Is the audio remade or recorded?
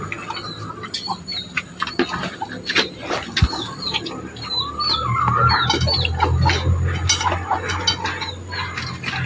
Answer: recorded